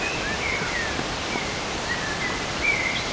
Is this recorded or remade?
remade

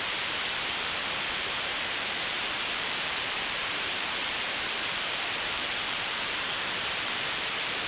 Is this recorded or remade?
remade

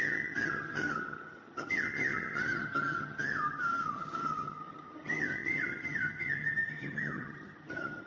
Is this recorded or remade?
remade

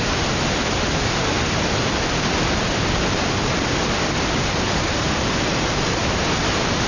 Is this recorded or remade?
recorded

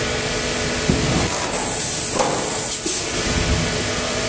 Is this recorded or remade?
recorded